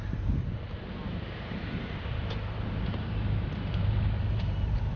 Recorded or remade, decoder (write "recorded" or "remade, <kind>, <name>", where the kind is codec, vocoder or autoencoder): remade, vocoder, BigVGAN v2